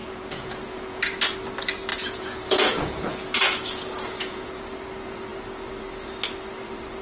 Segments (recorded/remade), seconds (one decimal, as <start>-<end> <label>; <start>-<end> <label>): 0.0-1.0 remade; 1.0-1.9 recorded; 1.9-4.6 remade; 4.6-7.0 recorded